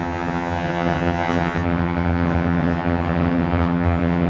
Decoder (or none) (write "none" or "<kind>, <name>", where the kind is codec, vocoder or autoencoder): vocoder, HiFi-GAN